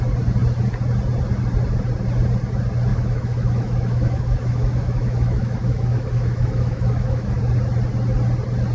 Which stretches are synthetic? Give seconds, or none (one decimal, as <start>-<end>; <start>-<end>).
2.9-7.4